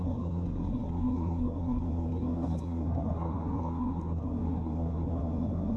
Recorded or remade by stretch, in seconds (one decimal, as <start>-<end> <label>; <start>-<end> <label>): 0.0-5.8 remade